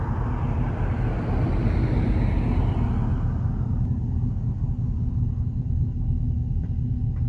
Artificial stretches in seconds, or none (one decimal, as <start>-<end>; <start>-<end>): none